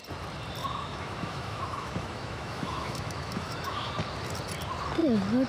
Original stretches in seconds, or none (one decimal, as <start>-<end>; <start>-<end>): 0.0-0.6; 3.9-5.5